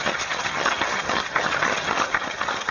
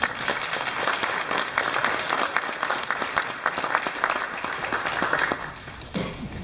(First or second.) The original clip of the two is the second